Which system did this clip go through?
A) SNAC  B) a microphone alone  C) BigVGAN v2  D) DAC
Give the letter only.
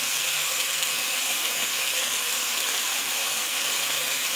A